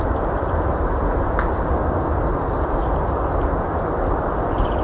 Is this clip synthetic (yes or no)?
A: no